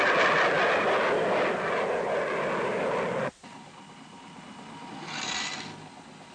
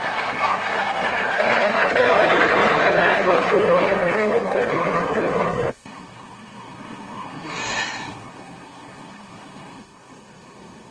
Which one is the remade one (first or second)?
second